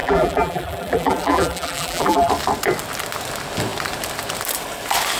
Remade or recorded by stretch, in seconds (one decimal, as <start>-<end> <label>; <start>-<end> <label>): 0.0-2.3 remade; 2.3-5.2 recorded